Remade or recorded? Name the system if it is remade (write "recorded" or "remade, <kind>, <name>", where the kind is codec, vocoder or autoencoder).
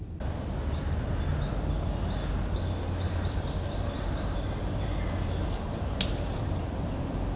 recorded